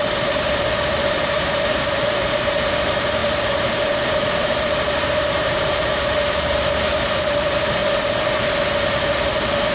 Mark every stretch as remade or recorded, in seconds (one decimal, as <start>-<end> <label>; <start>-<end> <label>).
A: 0.0-7.8 remade; 7.8-9.7 recorded